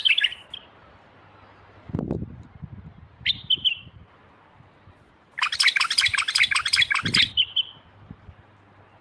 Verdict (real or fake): real